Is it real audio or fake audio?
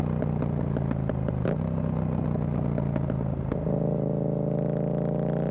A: real